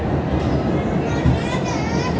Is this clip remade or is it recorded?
recorded